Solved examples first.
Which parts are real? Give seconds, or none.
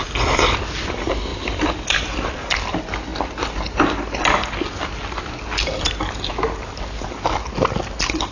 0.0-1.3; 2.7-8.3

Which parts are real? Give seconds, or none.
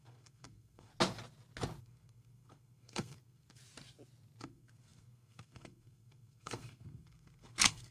0.9-1.8; 3.6-4.4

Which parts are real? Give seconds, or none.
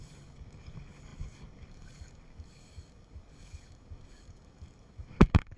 none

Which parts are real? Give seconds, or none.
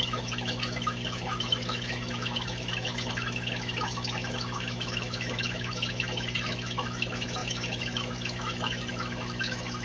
none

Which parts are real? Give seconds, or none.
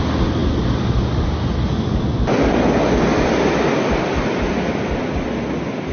0.0-5.9